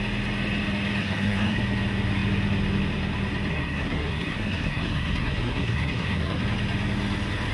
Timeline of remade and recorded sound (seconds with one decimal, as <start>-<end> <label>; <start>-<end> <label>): 0.0-1.0 recorded; 1.0-1.6 remade; 1.6-3.5 recorded; 3.5-6.4 remade; 6.4-7.5 recorded